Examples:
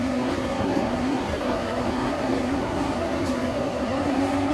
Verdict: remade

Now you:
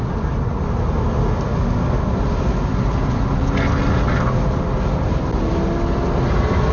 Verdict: recorded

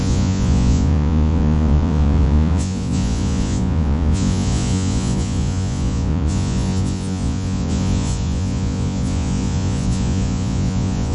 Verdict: remade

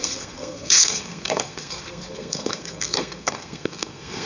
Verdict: remade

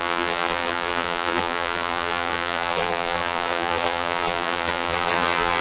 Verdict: remade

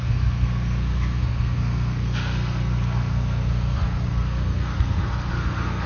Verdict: remade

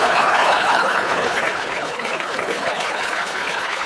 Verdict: remade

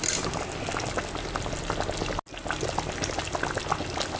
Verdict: recorded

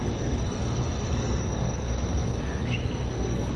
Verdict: remade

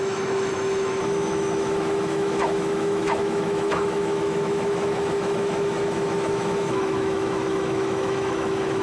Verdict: remade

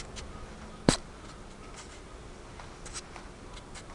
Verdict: recorded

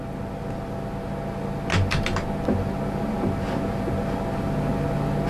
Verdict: recorded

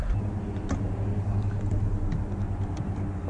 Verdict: recorded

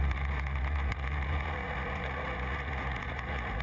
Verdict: remade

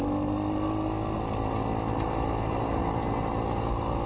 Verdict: recorded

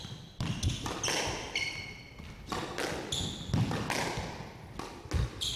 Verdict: recorded